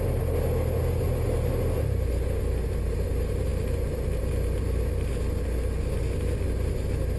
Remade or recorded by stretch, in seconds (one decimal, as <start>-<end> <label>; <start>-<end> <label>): 0.0-7.2 recorded